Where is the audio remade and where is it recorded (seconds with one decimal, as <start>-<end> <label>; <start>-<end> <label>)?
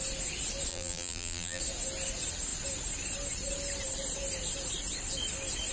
0.0-0.7 recorded; 0.7-1.6 remade; 1.6-5.7 recorded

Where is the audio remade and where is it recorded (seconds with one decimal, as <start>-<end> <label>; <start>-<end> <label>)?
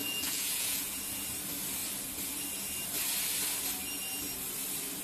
0.0-1.0 remade; 1.0-5.0 recorded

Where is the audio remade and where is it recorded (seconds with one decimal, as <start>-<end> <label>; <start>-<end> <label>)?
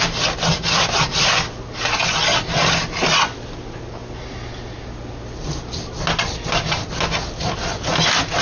0.0-8.4 recorded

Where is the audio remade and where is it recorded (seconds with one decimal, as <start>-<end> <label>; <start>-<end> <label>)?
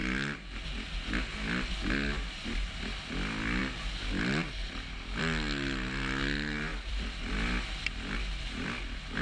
0.0-6.7 recorded; 6.7-7.3 remade; 7.3-9.2 recorded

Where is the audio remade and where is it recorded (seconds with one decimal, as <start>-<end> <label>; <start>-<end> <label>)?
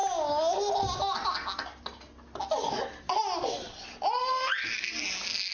0.0-5.5 recorded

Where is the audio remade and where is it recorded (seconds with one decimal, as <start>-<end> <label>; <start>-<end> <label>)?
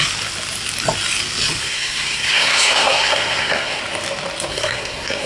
0.0-1.6 recorded; 1.6-3.8 remade; 3.8-4.5 recorded; 4.5-5.3 remade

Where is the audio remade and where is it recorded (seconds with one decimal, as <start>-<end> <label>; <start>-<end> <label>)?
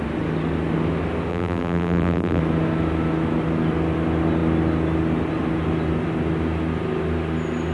0.0-1.3 recorded; 1.3-2.4 remade; 2.4-7.7 recorded